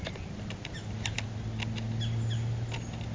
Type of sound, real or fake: real